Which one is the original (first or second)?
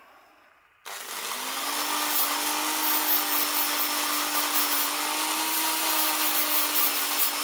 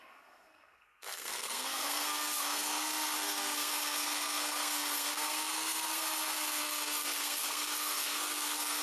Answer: first